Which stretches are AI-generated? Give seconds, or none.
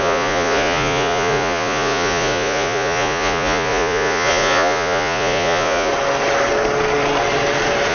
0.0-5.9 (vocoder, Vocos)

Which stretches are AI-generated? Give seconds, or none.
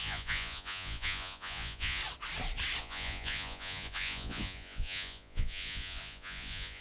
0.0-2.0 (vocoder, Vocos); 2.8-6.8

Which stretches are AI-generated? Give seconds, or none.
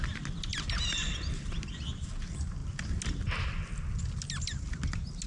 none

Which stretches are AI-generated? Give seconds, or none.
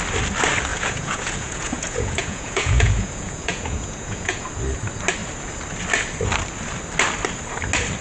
0.7-4.4 (vocoder, Vocos)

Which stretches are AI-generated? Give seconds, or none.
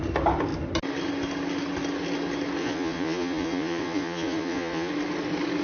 2.6-4.9 (vocoder, Vocos)